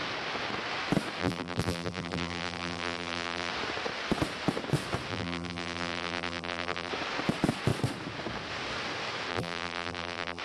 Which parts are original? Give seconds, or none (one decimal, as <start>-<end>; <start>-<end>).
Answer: 0.0-1.2; 3.5-5.1; 6.9-9.3